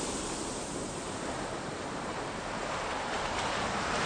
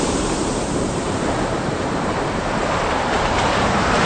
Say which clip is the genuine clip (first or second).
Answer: first